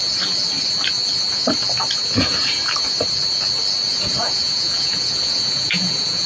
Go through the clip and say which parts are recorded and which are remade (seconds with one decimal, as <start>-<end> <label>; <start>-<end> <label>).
0.0-3.9 recorded; 3.9-6.3 remade